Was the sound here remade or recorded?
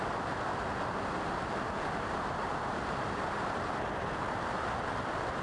recorded